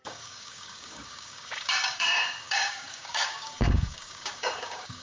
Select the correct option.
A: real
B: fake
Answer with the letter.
B